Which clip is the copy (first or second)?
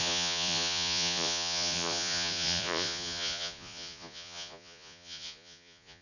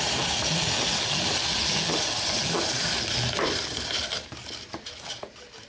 first